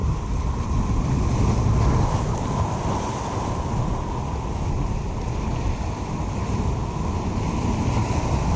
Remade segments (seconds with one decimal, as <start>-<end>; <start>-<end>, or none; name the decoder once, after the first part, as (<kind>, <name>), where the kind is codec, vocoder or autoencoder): none